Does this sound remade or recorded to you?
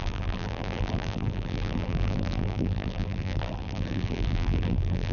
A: remade